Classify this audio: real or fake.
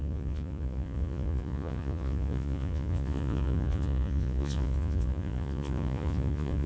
fake